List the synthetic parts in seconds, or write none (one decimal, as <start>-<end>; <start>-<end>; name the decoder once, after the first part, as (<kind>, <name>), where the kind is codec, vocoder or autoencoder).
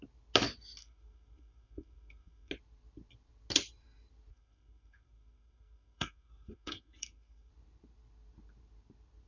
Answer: 0.8-2.5 (codec, SNAC); 4.3-7.5